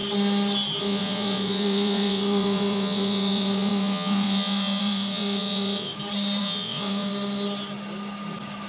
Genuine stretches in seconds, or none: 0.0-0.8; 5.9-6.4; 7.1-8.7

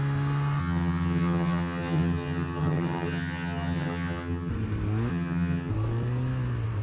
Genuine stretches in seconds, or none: 0.0-0.6; 4.5-5.1; 5.7-6.8

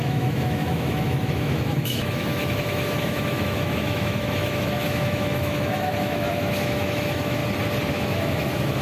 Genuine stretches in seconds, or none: 7.4-7.9

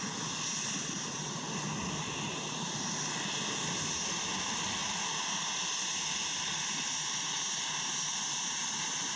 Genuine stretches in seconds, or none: 0.0-9.2